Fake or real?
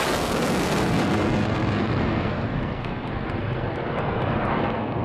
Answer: fake